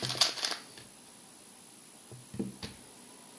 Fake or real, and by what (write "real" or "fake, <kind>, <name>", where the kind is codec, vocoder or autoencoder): real